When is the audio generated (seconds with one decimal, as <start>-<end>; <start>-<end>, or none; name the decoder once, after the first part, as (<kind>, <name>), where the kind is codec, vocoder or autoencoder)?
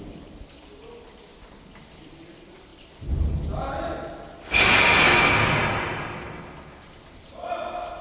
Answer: none